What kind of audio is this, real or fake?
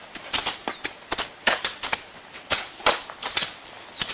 real